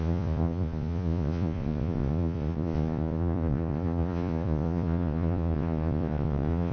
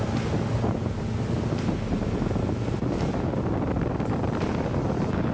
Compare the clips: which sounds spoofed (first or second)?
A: first